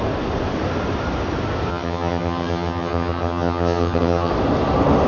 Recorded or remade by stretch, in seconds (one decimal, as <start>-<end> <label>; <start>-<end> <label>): 0.0-1.7 recorded; 1.7-4.3 remade; 4.3-5.1 recorded